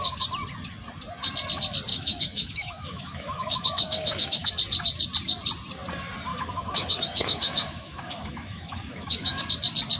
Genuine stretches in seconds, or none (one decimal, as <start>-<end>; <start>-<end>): 0.0-1.9; 4.5-6.3; 9.4-10.0